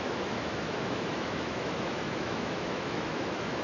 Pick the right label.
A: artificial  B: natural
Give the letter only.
A